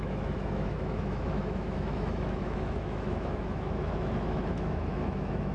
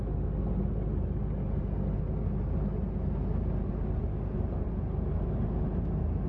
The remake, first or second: first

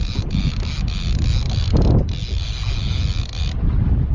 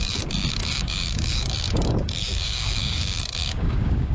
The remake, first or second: second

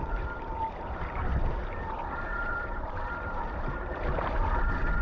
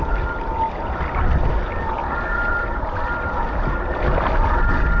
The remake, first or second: first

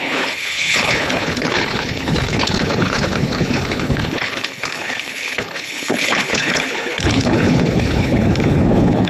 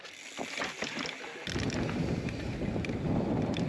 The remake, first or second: first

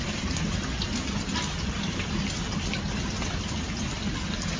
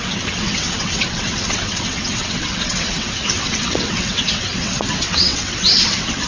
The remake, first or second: second